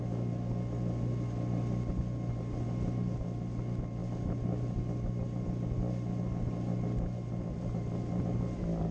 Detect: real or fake real